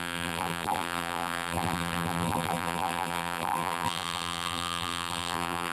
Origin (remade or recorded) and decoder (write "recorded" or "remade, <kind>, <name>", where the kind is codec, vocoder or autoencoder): remade, vocoder, BigVGAN v2